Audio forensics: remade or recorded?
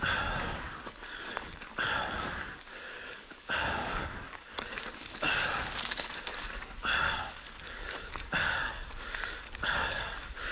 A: remade